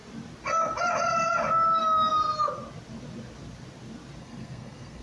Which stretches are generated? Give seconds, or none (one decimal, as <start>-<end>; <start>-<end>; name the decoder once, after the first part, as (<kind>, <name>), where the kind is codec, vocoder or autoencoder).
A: 4.2-5.0 (codec, SNAC)